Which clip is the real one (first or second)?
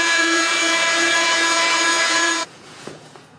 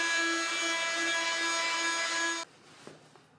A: second